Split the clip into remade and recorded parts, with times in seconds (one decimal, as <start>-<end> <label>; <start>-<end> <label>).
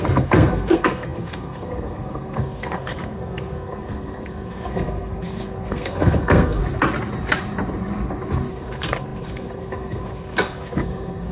0.0-6.6 remade; 6.6-8.5 recorded; 8.5-11.3 remade